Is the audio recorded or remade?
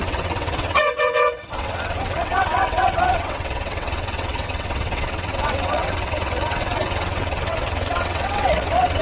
remade